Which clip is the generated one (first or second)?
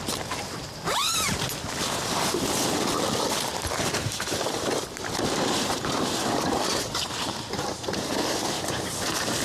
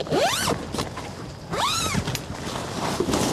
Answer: first